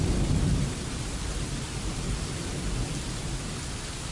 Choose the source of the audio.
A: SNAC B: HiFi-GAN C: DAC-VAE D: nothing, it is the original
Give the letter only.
D